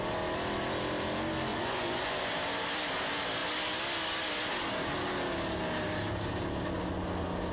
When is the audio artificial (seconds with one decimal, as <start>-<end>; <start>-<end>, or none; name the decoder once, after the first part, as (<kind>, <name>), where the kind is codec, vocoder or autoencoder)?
1.5-2.3 (vocoder, Vocos)